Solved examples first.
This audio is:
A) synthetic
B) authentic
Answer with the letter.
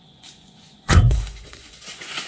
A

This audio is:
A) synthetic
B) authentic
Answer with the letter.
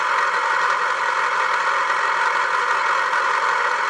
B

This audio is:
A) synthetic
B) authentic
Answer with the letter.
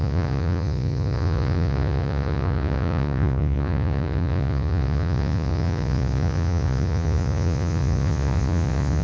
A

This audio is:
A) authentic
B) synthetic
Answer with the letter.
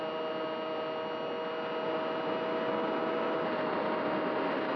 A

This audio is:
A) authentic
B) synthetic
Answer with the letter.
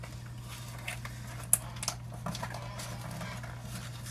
A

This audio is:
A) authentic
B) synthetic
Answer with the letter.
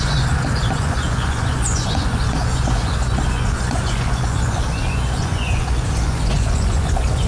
B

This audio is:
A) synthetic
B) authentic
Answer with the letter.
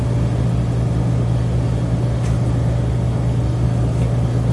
B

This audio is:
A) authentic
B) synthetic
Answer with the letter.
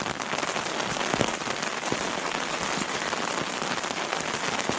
A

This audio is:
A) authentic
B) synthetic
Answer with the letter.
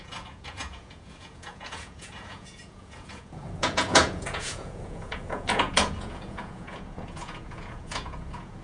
B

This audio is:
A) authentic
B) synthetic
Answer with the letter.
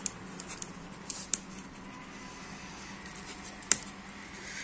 A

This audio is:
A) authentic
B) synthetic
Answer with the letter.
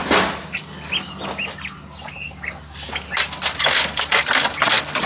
A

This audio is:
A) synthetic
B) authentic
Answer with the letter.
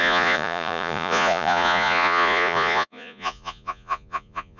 A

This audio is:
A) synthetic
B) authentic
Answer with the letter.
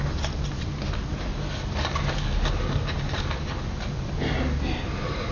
B